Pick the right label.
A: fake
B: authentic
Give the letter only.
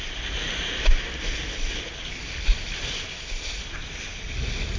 B